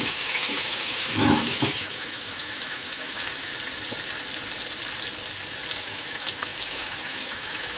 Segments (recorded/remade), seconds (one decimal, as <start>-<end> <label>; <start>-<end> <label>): 0.0-3.5 remade; 3.5-5.8 recorded; 5.8-7.8 remade